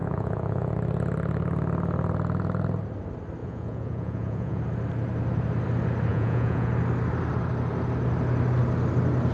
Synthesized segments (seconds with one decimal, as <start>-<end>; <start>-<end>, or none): 0.0-0.7; 3.4-4.6; 6.1-6.7